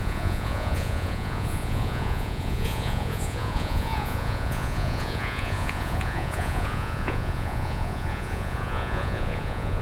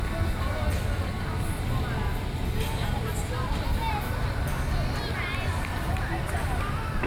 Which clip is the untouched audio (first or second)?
second